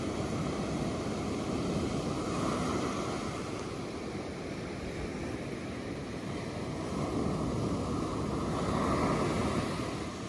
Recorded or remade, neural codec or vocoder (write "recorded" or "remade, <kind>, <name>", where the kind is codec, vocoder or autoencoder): recorded